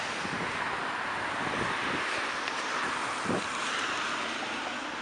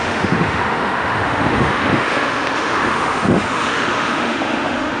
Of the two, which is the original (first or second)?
first